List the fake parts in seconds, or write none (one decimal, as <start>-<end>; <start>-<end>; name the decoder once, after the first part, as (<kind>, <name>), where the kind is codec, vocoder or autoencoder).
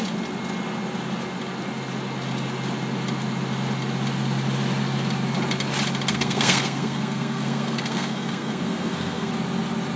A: 6.1-9.3 (codec, SNAC)